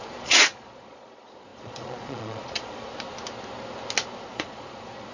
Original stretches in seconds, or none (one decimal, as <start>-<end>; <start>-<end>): 2.9-4.3